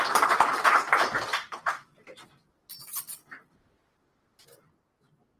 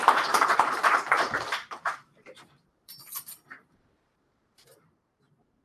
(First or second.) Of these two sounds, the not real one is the second